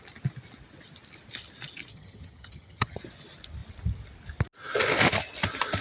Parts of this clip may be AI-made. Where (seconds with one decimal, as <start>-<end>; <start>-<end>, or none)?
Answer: 1.9-3.0